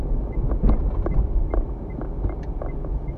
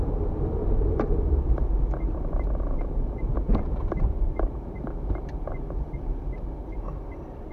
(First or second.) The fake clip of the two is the second